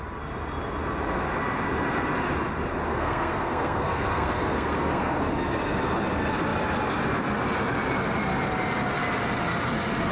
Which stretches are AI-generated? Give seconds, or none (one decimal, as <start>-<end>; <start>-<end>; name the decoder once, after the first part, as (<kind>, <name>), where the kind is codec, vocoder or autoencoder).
2.9-5.2 (codec, SNAC)